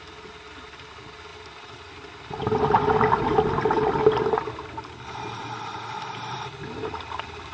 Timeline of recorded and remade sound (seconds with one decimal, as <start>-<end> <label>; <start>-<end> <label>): 0.0-7.5 recorded